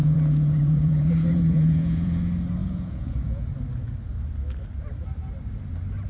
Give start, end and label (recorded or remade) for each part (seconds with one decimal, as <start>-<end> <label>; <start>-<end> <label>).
0.0-2.2 remade; 2.2-2.6 recorded; 2.6-3.5 remade; 3.5-6.1 recorded